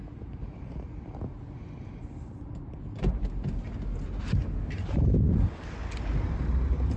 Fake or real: real